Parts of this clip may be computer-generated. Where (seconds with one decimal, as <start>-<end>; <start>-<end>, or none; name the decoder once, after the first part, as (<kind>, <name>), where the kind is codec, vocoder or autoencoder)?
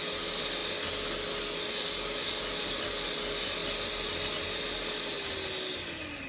none